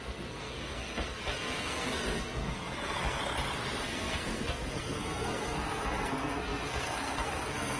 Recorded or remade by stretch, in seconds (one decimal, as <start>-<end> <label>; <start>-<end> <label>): 0.0-3.2 remade; 3.2-3.8 recorded; 3.8-7.8 remade

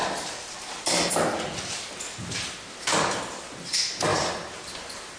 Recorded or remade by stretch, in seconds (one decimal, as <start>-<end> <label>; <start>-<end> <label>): 0.0-5.2 recorded

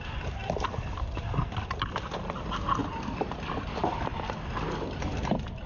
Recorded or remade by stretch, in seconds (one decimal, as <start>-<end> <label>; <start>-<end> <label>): 0.0-5.7 recorded

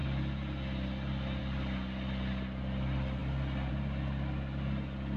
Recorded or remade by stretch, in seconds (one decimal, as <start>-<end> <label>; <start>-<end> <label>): 0.0-5.2 recorded

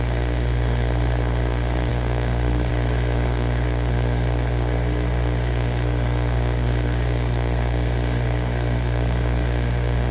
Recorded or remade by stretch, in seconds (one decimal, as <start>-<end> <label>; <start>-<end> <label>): 0.0-10.1 remade

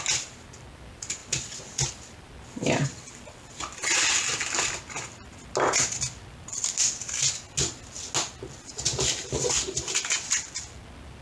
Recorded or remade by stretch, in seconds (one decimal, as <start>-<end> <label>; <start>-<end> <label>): 0.0-11.2 recorded

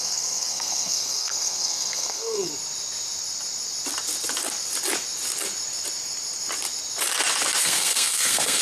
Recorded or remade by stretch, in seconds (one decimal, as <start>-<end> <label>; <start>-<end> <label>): 0.0-2.5 remade; 2.5-7.6 recorded; 7.6-8.6 remade

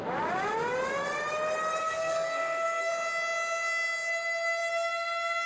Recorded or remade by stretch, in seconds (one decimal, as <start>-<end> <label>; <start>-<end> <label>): 0.0-1.8 recorded; 1.8-2.9 remade; 2.9-5.5 recorded